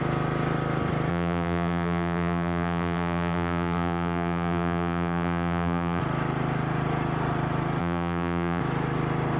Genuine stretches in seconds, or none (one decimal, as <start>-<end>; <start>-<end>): 0.0-1.1; 6.0-7.8; 8.6-9.4